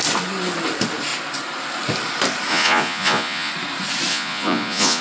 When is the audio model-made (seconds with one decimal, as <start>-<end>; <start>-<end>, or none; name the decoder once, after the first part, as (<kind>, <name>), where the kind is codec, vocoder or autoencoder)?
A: 2.5-3.5 (vocoder, Vocos); 4.1-5.0